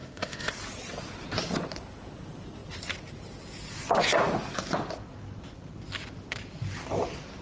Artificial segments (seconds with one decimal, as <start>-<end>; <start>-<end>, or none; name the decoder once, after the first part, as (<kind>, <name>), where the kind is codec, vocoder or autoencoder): 0.0-0.5 (codec, ZipCodec)